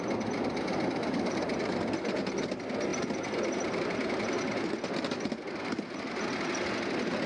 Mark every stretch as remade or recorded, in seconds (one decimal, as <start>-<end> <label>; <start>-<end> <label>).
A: 0.0-7.3 recorded